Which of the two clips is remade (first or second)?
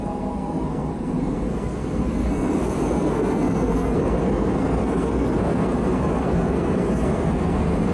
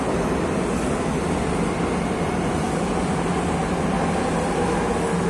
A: first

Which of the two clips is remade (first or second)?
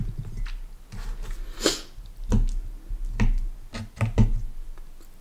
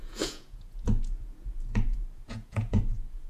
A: second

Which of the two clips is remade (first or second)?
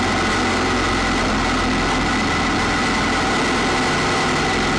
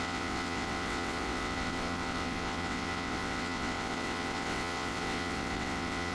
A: second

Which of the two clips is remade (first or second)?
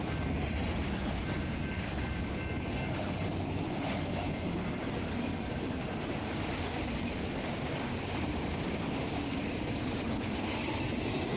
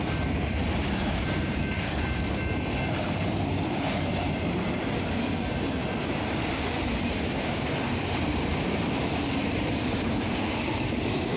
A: second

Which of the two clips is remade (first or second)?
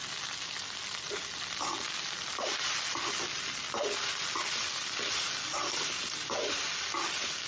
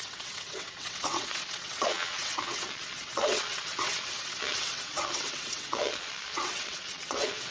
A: second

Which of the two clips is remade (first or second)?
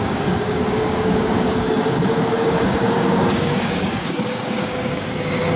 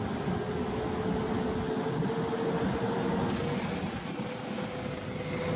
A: first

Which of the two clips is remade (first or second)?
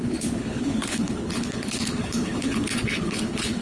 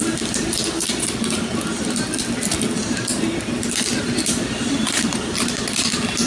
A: first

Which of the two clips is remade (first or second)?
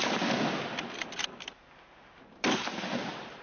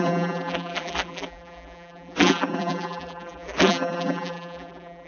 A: second